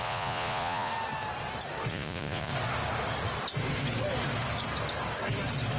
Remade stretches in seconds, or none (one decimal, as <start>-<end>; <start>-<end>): 0.0-0.9; 1.9-2.5